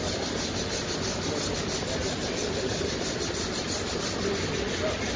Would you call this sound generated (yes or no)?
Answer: no